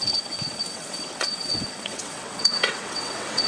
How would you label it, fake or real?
fake